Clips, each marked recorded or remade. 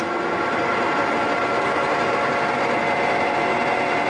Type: recorded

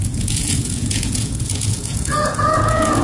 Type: remade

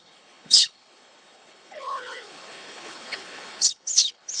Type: remade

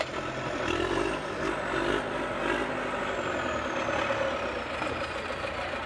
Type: recorded